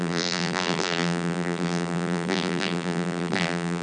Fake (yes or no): yes